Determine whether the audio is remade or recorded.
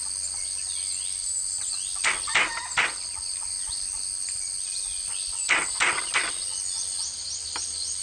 recorded